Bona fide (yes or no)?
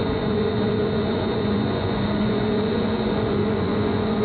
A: no